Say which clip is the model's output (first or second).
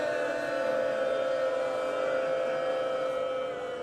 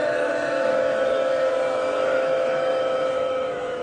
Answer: second